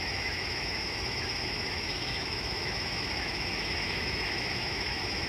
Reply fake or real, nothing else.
fake